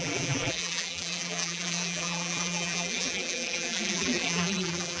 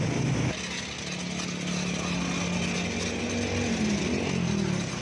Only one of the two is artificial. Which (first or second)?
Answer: first